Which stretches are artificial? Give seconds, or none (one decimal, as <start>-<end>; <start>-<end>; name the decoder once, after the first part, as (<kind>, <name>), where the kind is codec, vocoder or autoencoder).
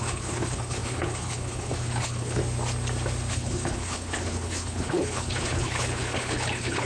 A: 0.0-2.4 (codec, HILCodec); 3.3-6.9